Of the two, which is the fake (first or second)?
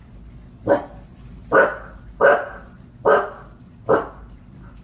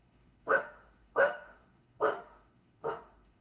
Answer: second